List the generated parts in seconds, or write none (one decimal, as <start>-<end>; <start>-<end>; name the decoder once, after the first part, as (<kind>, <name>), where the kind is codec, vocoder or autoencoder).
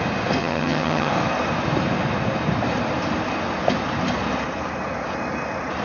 0.4-1.1 (vocoder, HiFi-GAN)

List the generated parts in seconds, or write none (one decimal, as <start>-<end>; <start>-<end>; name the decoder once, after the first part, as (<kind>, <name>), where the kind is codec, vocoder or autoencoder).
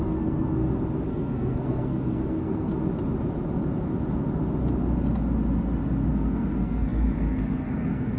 0.0-0.6 (codec, SNAC); 1.1-2.7; 6.1-8.2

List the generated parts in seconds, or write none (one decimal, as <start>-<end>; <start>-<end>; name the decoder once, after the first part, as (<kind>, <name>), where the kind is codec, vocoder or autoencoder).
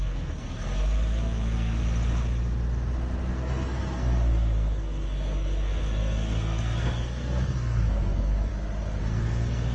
0.0-1.8 (codec, SNAC); 3.3-8.5; 9.0-9.7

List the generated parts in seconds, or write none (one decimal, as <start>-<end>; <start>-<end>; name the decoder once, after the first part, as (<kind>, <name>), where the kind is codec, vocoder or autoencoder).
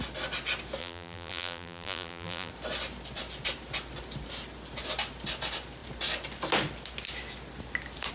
0.8-2.5 (vocoder, BigVGAN v2)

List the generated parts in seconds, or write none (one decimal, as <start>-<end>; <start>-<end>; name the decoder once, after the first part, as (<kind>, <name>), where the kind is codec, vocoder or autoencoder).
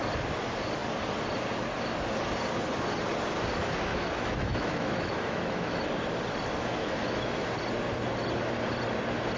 3.9-5.9 (autoencoder, DAC-VAE); 6.8-7.3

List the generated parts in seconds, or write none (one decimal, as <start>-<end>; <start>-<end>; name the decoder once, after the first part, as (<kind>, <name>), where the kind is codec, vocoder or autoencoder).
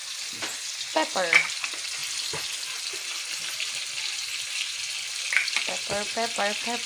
none